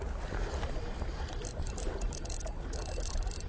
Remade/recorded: recorded